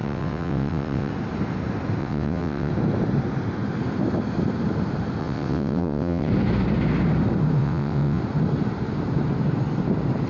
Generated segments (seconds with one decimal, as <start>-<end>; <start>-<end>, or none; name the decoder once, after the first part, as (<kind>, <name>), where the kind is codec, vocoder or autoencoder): 0.0-1.1 (vocoder, WaveNeXt); 2.0-2.7; 5.2-6.3; 7.6-8.2